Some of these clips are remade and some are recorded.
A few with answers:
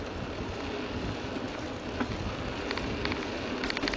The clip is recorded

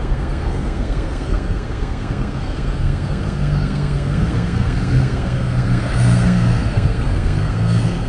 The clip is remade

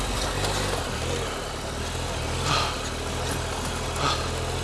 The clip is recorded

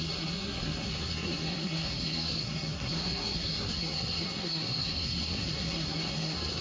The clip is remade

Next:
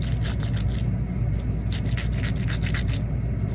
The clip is recorded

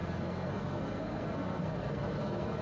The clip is remade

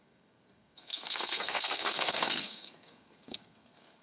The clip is remade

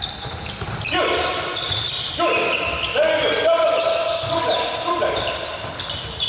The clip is recorded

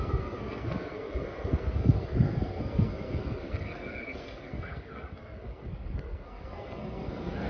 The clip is remade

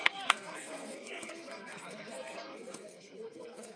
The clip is remade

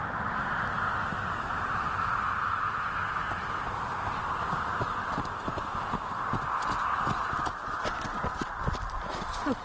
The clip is recorded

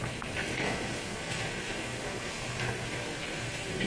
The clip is remade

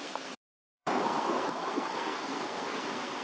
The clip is remade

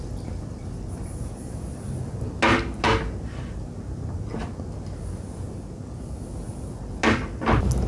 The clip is recorded